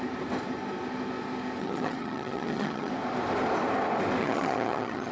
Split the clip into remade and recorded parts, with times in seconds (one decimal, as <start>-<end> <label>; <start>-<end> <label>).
0.0-1.6 recorded; 1.6-2.9 remade; 2.9-4.2 recorded; 4.2-5.1 remade